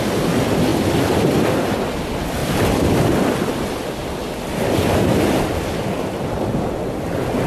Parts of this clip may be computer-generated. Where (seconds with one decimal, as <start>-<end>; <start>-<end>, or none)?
2.4-6.6